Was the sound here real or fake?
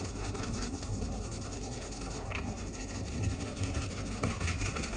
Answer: fake